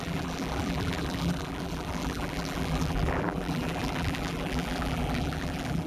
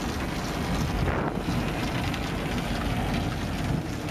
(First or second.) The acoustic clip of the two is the second